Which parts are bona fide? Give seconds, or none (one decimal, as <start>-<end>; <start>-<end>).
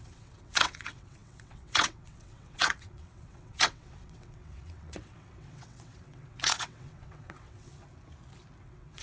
7.7-8.6